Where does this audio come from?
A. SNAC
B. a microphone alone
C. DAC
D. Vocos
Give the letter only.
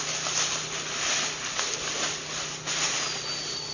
B